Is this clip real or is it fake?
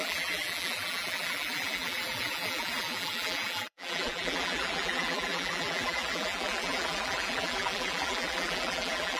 fake